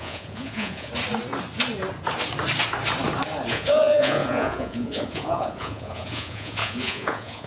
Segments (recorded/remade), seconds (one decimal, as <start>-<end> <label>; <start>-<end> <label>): 0.0-0.9 remade; 0.9-3.5 recorded; 3.5-7.5 remade